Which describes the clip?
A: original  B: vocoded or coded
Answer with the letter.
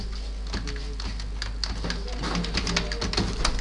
A